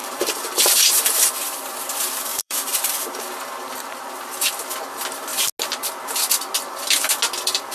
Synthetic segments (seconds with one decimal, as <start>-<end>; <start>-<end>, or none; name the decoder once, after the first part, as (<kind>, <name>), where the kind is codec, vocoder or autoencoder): 0.0-1.3 (vocoder, BigVGAN v2); 2.3-3.2